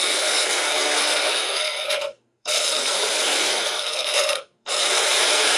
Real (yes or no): no